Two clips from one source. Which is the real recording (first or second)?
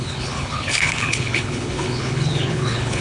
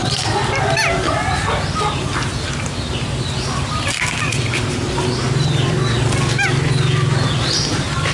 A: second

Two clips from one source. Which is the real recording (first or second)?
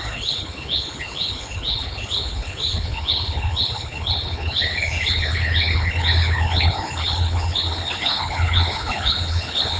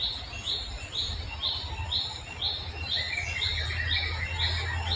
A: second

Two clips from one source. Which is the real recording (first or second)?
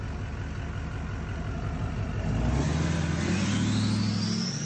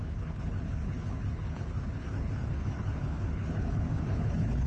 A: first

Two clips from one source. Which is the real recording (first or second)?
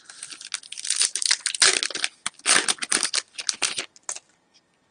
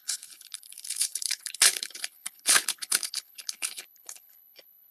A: first